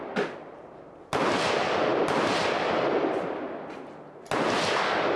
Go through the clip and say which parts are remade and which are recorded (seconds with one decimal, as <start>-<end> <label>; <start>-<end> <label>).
0.0-5.2 recorded